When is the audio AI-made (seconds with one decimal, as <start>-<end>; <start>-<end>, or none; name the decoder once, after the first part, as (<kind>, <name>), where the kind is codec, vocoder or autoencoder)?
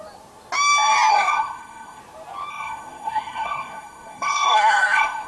1.1-2.0 (codec, SNAC); 2.5-5.3